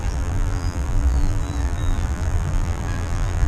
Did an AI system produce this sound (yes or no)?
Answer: yes